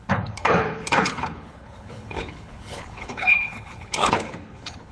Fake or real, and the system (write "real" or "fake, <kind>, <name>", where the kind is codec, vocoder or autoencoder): fake, codec, HILCodec